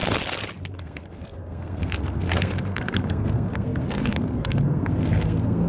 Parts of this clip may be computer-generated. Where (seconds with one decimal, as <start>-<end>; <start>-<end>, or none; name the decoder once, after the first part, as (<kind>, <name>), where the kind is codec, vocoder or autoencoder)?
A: 0.8-5.7 (codec, SNAC)